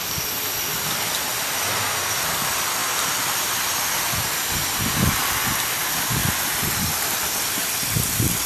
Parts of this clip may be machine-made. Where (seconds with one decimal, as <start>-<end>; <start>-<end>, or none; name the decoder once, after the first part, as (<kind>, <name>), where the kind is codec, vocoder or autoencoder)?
none